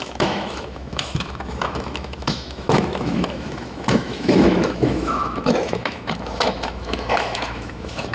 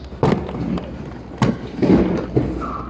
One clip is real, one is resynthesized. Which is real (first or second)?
second